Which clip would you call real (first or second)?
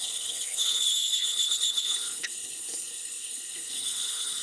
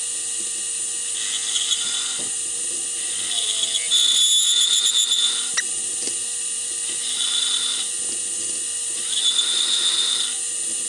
second